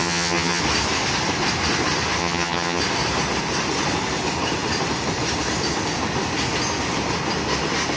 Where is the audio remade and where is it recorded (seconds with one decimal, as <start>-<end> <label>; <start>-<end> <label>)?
0.0-0.6 remade; 0.6-2.2 recorded; 2.2-2.8 remade; 2.8-8.0 recorded